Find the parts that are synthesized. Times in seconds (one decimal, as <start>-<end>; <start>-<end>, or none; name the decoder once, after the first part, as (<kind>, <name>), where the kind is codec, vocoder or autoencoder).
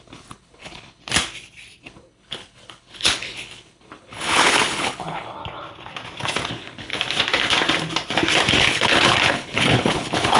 0.0-1.0 (codec, HILCodec); 1.8-5.4; 6.5-6.9; 8.6-10.4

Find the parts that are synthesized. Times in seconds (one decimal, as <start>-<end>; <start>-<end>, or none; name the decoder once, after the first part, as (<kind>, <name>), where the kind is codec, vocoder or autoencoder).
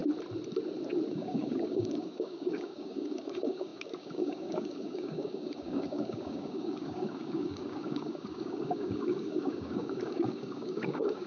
1.1-11.3 (codec, DAC)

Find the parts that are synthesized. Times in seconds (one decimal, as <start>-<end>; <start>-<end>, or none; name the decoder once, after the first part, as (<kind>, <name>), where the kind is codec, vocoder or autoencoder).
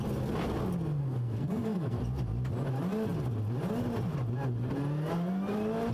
1.0-2.0 (codec, SNAC)